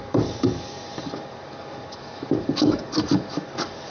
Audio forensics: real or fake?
fake